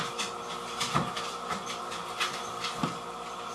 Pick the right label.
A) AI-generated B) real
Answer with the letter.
B